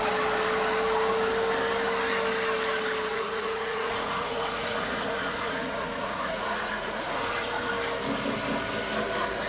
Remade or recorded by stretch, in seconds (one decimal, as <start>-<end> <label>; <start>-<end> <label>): 0.0-3.1 recorded; 3.1-7.7 remade; 7.7-9.5 recorded